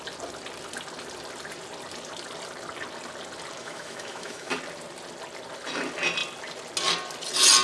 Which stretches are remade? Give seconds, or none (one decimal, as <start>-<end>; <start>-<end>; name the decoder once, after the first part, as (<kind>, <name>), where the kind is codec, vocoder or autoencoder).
3.6-4.5 (autoencoder, DAC-VAE)